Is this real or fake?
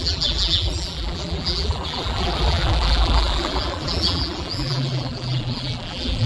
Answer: fake